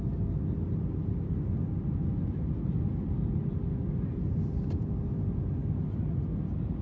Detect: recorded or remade recorded